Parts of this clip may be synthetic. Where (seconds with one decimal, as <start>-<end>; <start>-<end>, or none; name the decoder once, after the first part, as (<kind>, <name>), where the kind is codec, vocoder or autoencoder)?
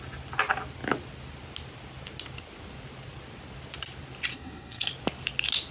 4.3-4.9 (codec, SNAC)